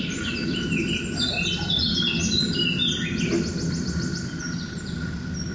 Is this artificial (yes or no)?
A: no